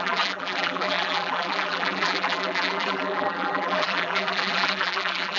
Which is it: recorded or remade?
remade